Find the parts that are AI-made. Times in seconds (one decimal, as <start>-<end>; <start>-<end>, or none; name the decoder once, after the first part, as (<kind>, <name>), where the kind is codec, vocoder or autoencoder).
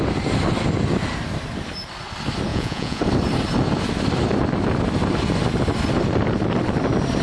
2.5-3.0 (vocoder, Vocos)